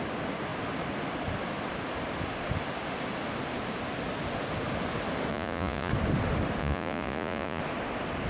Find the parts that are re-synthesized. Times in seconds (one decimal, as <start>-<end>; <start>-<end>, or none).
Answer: 5.3-5.9; 6.6-7.6